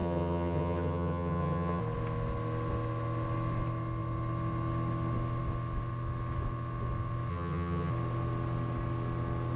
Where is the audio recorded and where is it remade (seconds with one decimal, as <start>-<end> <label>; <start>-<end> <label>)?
0.0-1.8 remade; 1.8-7.3 recorded; 7.3-7.9 remade; 7.9-9.6 recorded